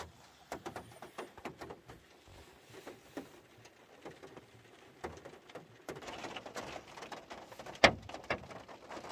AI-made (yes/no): no